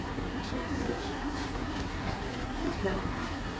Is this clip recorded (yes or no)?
no